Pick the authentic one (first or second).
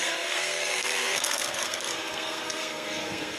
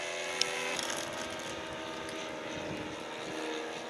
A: second